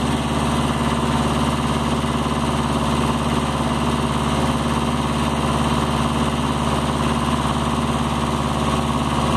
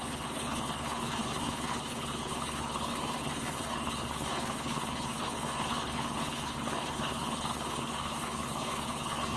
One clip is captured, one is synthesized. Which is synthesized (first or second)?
second